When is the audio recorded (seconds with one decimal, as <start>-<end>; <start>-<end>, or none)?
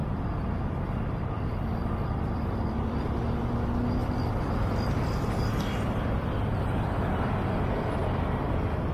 3.1-4.0; 7.3-8.0